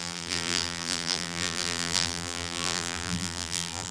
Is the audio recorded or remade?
remade